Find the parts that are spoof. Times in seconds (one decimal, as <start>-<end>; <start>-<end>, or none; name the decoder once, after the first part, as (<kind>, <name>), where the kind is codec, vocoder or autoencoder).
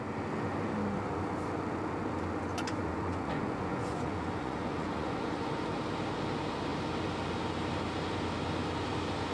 2.5-5.6 (vocoder, Vocos)